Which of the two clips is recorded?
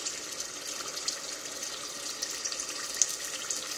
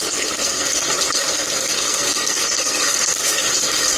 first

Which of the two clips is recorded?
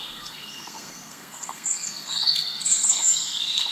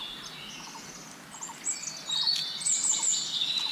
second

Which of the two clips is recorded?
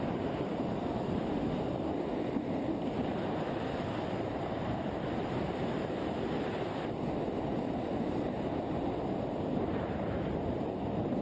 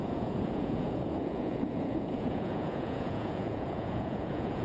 first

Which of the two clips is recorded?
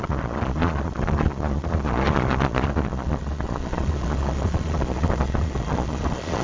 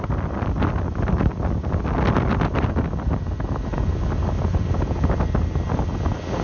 second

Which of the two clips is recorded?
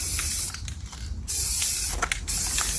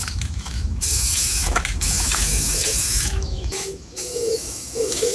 first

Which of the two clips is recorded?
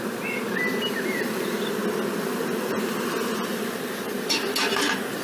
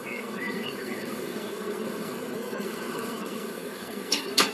first